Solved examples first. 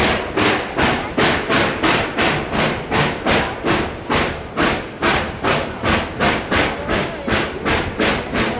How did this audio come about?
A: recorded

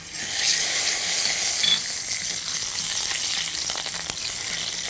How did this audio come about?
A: recorded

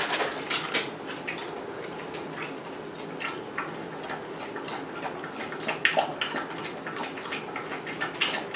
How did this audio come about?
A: recorded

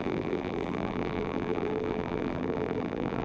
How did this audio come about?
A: remade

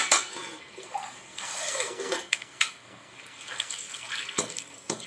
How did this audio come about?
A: remade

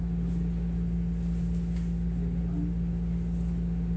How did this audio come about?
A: recorded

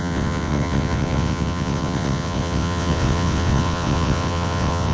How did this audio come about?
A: remade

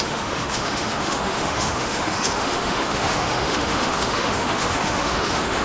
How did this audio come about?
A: remade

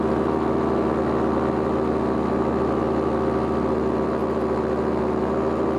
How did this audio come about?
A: recorded